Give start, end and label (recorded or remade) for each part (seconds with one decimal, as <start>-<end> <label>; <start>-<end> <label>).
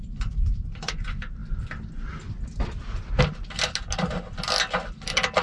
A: 0.0-5.4 recorded